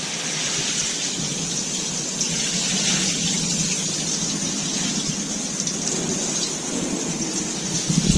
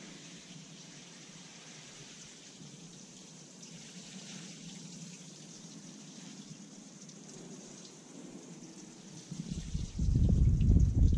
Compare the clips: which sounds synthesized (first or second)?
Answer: second